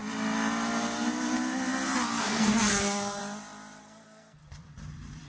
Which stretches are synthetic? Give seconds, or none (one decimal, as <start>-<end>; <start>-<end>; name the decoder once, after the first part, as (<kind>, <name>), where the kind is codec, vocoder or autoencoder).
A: 2.2-3.2 (codec, SNAC); 3.8-4.4